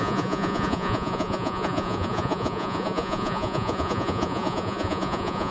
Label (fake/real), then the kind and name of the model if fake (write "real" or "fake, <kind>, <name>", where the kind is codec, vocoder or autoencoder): fake, vocoder, Vocos